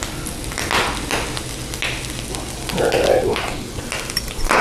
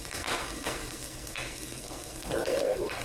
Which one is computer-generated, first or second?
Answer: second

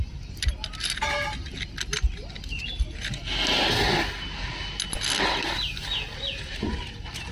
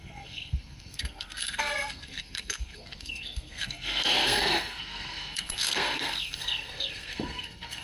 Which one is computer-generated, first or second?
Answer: second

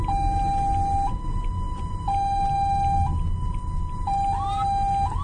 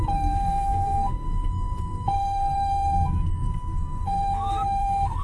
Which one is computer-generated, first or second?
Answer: second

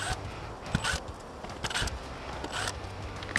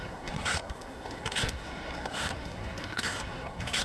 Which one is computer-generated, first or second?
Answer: second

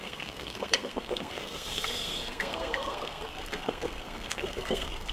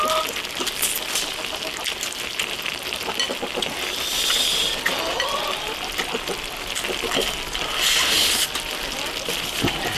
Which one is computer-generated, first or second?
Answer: first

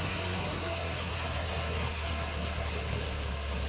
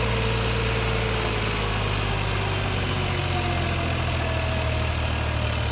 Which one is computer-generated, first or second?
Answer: first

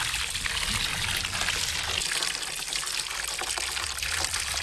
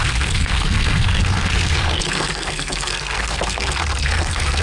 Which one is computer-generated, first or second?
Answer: second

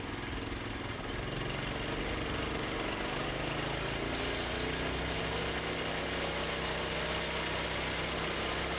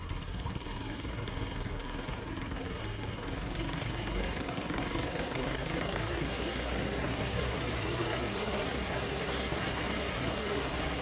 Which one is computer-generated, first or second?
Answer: second